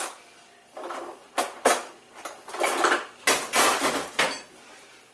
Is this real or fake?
real